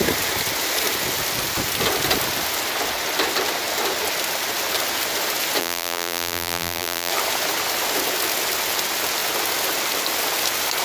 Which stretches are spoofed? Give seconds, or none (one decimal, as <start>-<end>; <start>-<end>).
5.6-7.1